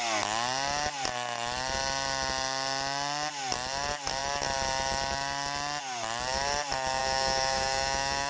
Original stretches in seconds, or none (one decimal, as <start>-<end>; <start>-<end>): 0.0-7.0